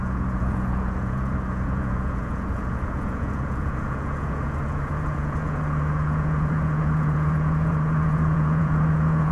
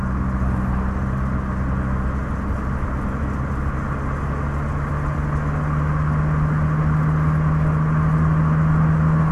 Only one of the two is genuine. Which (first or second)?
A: second